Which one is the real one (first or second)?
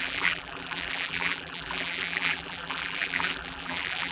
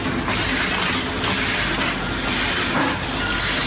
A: second